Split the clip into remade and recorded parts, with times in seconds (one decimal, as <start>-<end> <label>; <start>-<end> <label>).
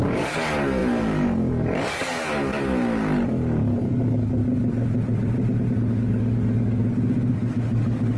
0.0-4.4 remade; 4.4-5.9 recorded; 5.9-6.8 remade; 6.8-7.3 recorded; 7.3-8.2 remade